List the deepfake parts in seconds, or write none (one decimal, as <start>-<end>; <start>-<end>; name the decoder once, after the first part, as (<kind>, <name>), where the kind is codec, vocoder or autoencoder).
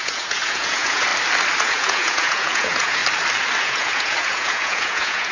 0.0-1.1 (vocoder, Vocos); 1.6-3.0; 3.6-5.3